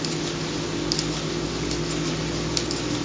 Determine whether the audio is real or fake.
real